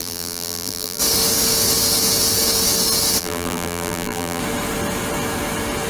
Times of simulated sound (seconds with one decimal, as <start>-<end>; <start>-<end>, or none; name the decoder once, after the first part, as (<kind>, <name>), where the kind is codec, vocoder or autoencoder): 0.0-1.0 (vocoder, BigVGAN v2); 3.2-4.4